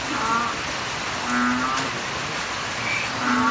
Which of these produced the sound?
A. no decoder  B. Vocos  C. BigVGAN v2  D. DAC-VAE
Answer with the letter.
A